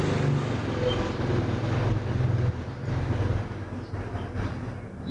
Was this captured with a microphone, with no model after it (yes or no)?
yes